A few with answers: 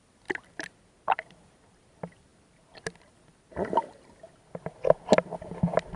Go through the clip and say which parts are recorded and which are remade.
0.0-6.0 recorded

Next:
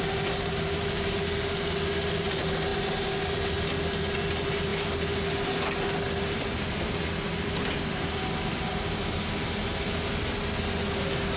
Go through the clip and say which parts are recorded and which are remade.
0.0-11.4 recorded

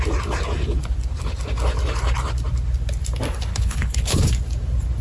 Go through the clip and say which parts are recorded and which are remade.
0.0-3.5 recorded; 3.5-4.3 remade; 4.3-5.0 recorded

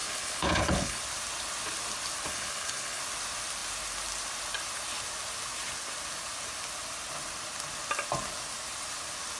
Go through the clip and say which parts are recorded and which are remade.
0.0-1.0 remade; 1.0-2.3 recorded; 2.3-3.0 remade; 3.0-9.4 recorded